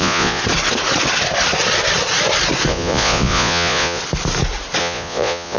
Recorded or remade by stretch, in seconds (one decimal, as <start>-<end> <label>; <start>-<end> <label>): 0.0-0.4 remade; 0.4-2.7 recorded; 2.7-4.0 remade; 4.0-4.8 recorded; 4.8-5.6 remade